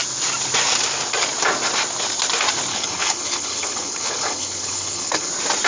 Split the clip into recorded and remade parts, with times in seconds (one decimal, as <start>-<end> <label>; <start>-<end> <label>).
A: 0.0-2.7 recorded; 2.7-5.3 remade; 5.3-5.7 recorded